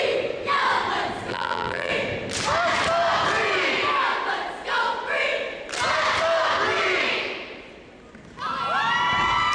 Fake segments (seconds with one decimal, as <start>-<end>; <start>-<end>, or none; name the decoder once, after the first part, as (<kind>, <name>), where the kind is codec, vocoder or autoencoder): 1.3-1.9 (vocoder, BigVGAN v2)